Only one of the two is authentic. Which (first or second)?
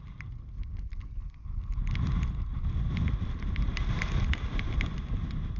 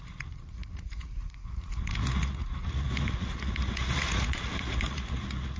first